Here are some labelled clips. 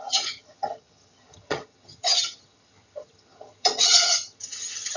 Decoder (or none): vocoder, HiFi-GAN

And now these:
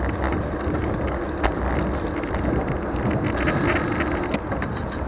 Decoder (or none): none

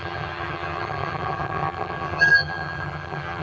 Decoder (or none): vocoder, HiFi-GAN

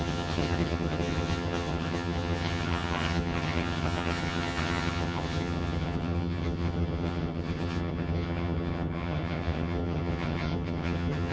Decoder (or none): vocoder, HiFi-GAN